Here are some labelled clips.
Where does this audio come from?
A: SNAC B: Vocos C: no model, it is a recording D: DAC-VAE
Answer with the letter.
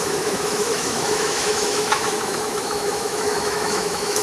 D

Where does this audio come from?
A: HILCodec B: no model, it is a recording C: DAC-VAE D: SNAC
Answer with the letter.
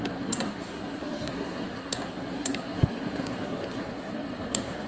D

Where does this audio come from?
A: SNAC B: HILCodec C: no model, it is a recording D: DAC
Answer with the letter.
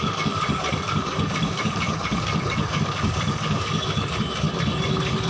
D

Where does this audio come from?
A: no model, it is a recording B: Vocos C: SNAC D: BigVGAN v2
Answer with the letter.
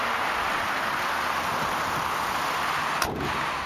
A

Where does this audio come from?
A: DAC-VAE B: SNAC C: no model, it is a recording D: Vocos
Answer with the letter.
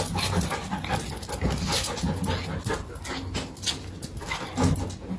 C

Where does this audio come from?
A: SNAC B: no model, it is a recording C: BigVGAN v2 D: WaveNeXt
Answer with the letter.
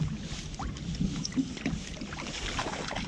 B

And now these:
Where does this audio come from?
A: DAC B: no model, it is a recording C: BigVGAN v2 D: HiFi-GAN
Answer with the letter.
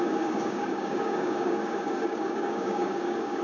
A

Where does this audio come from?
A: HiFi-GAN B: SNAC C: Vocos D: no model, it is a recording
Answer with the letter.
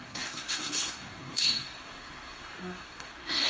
B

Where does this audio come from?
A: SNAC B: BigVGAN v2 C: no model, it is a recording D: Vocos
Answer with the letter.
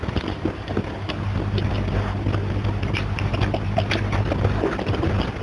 C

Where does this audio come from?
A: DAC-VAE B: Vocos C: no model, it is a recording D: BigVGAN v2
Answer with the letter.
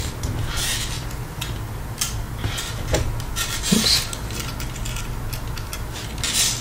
C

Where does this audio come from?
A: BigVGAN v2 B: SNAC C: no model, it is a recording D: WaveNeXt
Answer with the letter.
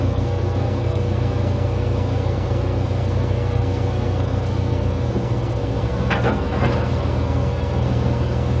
B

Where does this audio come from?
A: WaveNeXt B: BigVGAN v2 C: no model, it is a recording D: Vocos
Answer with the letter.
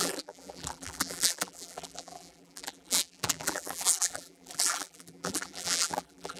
B